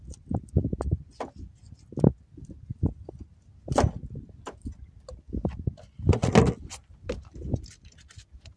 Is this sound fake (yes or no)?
no